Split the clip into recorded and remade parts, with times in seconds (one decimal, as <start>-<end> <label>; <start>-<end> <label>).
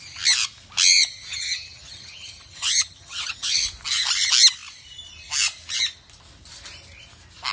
0.0-1.3 recorded; 1.3-3.6 remade; 3.6-7.5 recorded